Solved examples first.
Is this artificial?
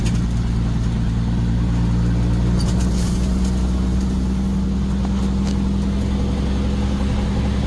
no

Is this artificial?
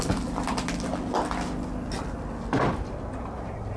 no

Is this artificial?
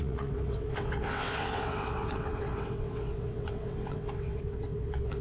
yes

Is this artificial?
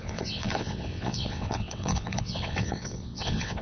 yes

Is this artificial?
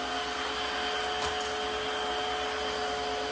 no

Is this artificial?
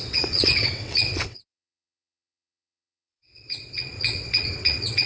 yes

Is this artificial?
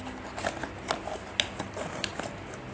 no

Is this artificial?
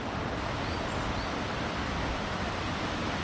no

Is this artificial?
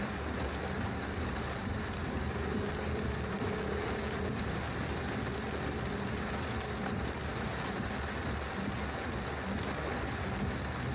no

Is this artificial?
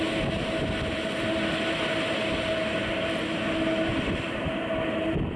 no